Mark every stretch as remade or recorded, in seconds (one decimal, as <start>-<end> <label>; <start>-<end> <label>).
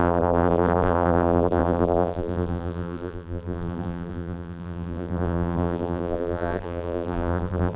0.0-7.8 remade